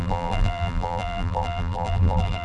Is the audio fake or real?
fake